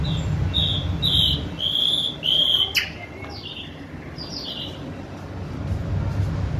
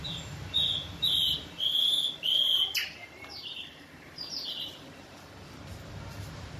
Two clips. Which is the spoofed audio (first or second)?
second